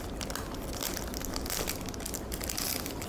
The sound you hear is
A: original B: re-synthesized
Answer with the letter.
A